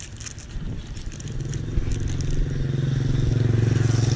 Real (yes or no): yes